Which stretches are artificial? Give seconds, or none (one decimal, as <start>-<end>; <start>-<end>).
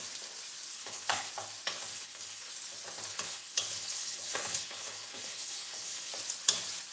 0.7-1.3; 1.9-2.5; 3.1-6.1